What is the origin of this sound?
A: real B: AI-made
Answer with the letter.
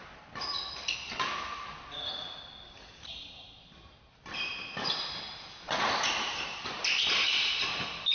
A